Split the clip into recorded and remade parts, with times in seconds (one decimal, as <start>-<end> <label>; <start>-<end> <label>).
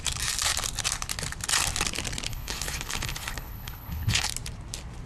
0.0-2.3 recorded; 2.3-4.3 remade; 4.3-5.1 recorded